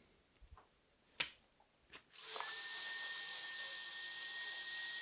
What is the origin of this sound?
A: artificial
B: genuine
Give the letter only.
B